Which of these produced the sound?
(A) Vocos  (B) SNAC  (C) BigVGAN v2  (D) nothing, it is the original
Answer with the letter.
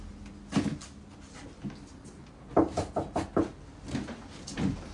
D